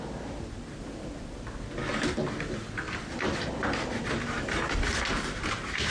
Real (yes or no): yes